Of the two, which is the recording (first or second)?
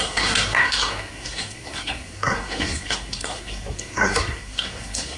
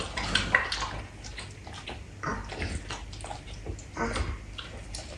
second